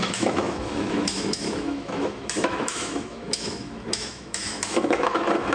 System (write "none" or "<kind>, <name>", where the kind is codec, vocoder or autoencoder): autoencoder, DAC-VAE